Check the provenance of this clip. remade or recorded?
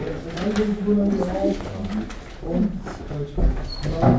recorded